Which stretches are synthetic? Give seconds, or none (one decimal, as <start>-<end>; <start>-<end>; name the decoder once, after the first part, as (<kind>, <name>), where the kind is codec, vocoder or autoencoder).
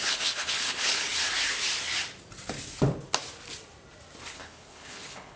0.0-1.1 (codec, HILCodec); 4.3-5.4